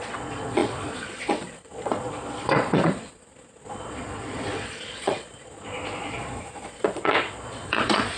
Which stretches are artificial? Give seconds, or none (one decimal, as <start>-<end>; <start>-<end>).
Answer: 0.0-8.2